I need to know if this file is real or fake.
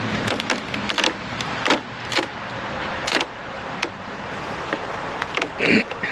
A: fake